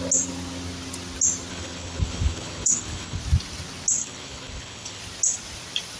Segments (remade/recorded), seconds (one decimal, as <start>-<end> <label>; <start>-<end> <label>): 0.0-1.5 recorded; 1.5-3.2 remade; 3.2-4.0 recorded; 4.0-5.0 remade; 5.0-6.0 recorded